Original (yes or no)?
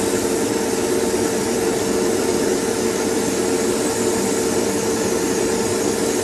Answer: yes